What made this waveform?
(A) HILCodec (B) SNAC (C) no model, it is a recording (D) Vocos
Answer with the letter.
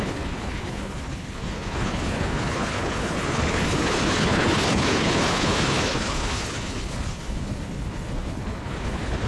A